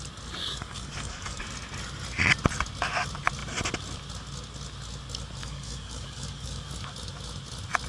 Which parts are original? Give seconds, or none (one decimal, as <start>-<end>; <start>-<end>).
0.0-0.4; 1.4-5.4; 6.7-7.9